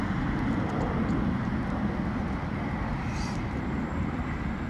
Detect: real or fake real